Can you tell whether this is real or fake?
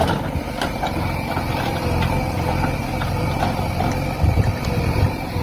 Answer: fake